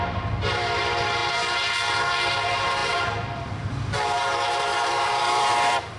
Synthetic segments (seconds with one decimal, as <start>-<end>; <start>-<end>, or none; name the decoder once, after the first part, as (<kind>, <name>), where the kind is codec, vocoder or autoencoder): 2.8-3.5 (vocoder, BigVGAN v2); 4.7-6.0